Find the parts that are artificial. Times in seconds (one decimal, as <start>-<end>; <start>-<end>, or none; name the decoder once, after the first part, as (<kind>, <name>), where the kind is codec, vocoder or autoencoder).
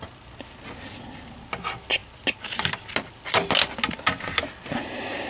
none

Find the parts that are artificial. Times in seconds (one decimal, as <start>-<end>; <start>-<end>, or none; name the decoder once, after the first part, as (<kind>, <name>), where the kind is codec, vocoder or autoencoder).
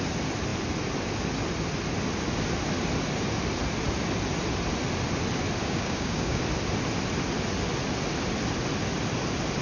5.6-6.4 (codec, DAC)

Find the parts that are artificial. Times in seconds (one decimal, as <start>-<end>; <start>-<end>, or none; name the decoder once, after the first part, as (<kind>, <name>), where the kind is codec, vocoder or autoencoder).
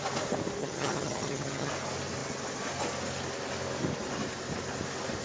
0.6-1.7 (vocoder, HiFi-GAN)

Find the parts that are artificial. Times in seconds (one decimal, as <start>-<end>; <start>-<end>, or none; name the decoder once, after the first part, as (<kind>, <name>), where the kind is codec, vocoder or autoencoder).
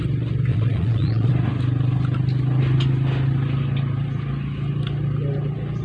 0.5-1.3 (vocoder, Vocos)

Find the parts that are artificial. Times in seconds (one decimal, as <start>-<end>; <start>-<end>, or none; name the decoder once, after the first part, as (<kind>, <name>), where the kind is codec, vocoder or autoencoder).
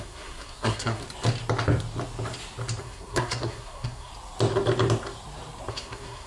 0.0-1.0 (codec, SNAC); 2.8-4.1; 5.7-6.3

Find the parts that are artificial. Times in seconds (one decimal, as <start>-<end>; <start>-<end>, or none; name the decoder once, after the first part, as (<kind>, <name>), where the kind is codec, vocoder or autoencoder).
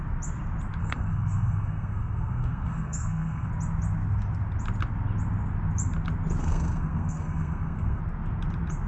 0.8-3.5 (codec, SNAC); 6.4-8.0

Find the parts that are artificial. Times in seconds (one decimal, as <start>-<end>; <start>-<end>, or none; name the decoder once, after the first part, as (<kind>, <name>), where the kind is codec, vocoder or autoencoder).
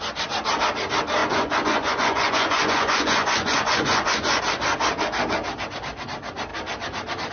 1.2-4.4 (vocoder, Vocos)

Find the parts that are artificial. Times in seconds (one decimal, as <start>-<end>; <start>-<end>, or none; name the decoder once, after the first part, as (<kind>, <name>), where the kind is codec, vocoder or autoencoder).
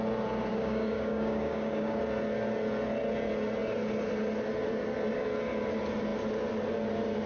0.5-2.0 (codec, DAC)